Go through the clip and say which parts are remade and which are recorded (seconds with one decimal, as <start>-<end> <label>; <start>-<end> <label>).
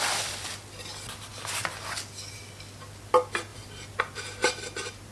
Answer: 0.0-5.1 recorded